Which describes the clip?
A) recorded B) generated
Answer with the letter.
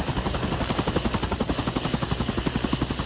A